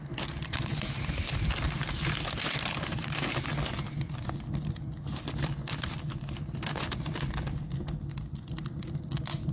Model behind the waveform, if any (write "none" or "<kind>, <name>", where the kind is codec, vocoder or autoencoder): none